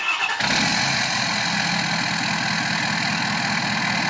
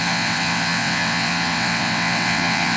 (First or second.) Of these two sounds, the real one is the first